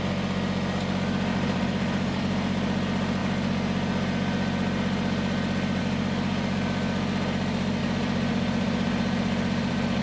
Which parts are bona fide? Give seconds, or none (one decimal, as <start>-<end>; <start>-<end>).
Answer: 0.0-1.3; 2.2-7.8